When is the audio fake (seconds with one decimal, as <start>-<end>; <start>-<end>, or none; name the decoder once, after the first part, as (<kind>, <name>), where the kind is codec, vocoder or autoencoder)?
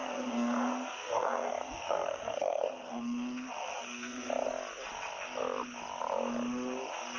0.0-4.3 (codec, SNAC)